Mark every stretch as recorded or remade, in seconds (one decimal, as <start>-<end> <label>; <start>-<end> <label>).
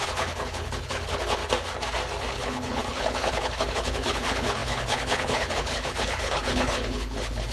0.0-1.4 remade; 1.4-2.3 recorded; 2.3-7.5 remade